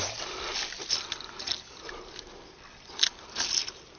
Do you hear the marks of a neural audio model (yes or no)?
no